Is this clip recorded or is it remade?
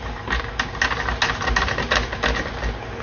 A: recorded